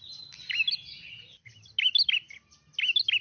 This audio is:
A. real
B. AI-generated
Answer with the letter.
A